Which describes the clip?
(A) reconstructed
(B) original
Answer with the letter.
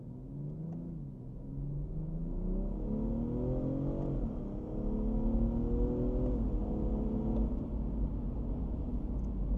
B